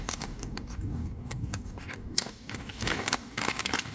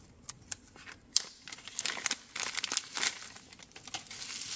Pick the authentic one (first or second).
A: second